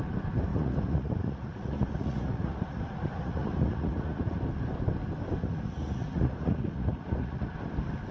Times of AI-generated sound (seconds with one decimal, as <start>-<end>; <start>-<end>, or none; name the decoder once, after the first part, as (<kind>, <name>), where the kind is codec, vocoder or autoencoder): 0.5-4.4 (vocoder, Vocos); 5.4-7.5